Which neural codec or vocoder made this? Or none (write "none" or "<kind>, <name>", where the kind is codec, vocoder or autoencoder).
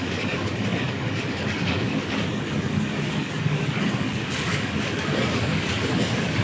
codec, DAC